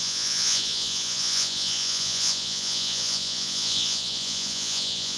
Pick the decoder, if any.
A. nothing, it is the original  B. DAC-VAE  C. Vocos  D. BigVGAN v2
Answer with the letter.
C